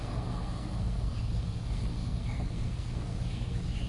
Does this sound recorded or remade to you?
remade